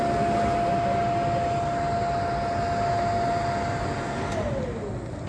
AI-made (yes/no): no